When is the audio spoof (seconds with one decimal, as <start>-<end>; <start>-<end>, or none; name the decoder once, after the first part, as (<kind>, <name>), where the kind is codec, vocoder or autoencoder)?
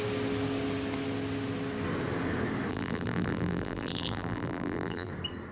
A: 2.7-5.1 (vocoder, BigVGAN v2)